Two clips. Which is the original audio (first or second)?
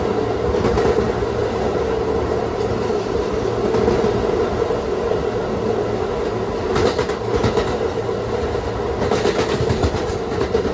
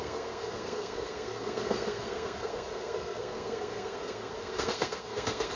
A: first